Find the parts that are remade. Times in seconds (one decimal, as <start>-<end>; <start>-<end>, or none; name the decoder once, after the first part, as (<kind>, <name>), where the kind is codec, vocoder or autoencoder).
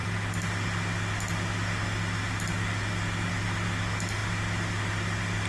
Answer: none